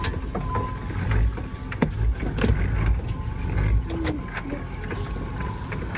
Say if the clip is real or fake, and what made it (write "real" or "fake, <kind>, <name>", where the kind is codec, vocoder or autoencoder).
real